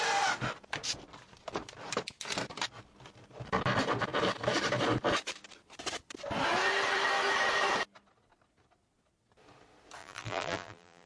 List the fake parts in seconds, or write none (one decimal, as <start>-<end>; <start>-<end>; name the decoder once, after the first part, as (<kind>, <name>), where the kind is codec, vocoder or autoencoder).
10.0-11.1 (vocoder, BigVGAN v2)